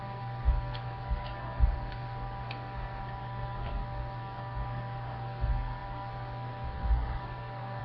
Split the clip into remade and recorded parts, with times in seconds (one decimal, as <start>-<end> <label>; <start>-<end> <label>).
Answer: 0.0-7.8 remade